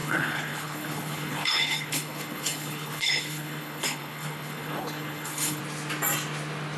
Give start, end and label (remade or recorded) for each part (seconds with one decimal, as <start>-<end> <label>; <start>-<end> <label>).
0.0-5.6 remade; 5.6-6.8 recorded